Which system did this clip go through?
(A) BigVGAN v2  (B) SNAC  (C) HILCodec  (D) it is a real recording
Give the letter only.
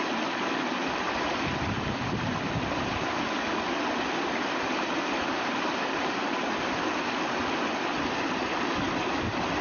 D